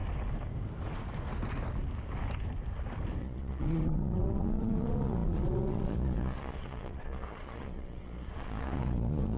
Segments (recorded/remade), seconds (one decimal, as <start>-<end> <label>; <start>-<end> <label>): 0.0-3.2 recorded; 3.2-9.4 remade